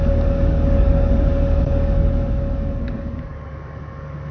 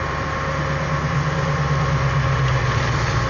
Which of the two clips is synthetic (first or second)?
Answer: first